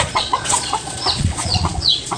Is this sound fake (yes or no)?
yes